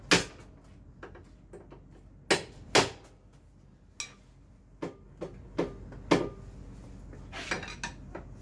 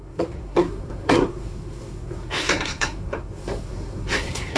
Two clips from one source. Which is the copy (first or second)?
second